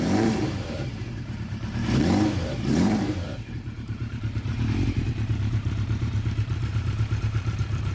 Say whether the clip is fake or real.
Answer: fake